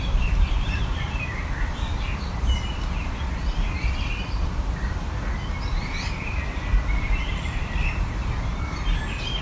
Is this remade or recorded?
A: remade